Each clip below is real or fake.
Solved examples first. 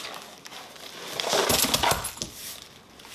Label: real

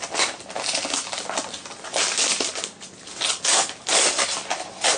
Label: real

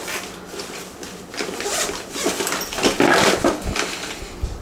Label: real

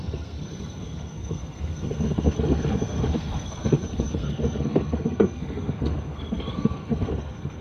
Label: fake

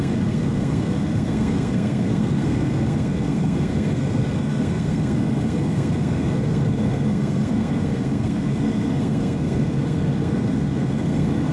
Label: fake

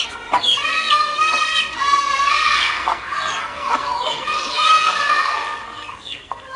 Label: fake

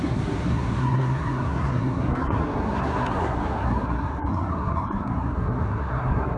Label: fake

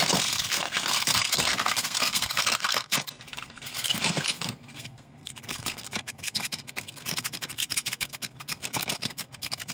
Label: fake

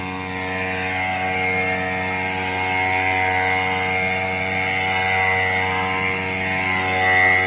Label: real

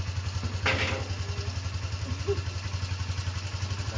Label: real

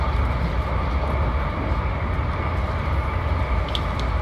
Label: real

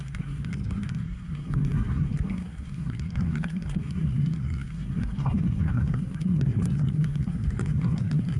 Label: fake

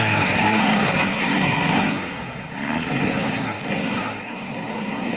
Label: fake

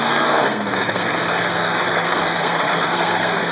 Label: fake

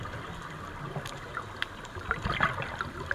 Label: real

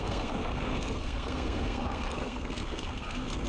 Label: fake